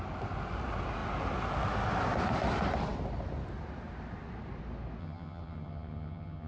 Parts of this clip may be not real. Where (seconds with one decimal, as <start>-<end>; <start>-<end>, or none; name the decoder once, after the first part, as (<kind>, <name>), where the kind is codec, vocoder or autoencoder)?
5.0-6.5 (vocoder, HiFi-GAN)